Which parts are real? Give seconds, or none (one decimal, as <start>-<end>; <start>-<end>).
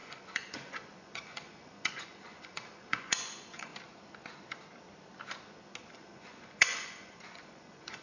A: 3.7-5.9